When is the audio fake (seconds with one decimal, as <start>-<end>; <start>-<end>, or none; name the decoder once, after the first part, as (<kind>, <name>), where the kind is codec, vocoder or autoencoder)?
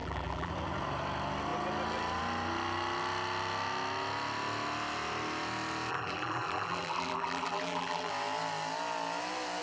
0.0-0.5 (vocoder, BigVGAN v2); 5.9-8.1